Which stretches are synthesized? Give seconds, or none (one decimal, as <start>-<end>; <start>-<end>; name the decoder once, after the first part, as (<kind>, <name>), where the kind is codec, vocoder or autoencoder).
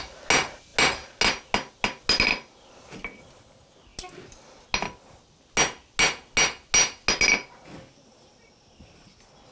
none